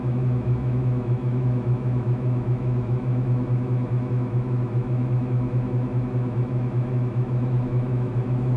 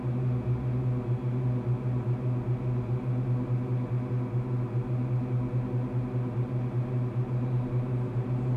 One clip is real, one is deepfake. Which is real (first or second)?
second